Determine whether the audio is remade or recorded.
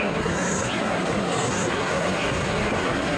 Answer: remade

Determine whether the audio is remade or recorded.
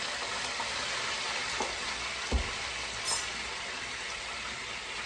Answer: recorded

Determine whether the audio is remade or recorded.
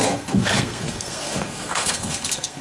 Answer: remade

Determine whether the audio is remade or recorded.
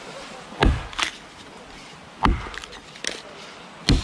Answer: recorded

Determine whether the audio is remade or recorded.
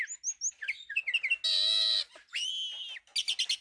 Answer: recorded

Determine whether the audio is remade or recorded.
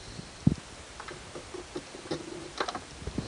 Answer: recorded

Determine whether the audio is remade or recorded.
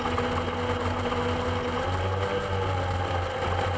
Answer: recorded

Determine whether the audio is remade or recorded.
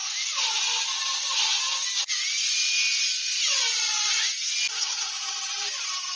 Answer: recorded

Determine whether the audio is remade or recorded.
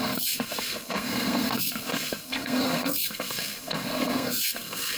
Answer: remade